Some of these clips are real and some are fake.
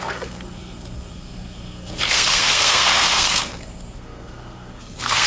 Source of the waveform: fake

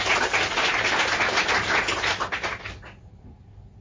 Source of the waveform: real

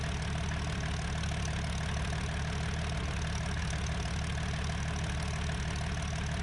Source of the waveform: real